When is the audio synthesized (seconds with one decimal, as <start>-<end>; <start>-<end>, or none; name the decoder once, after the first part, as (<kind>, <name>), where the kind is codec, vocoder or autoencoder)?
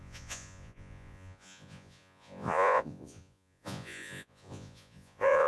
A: 0.0-5.5 (vocoder, Vocos)